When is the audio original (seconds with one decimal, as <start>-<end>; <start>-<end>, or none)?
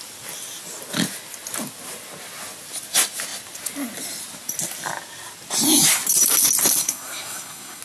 0.0-6.8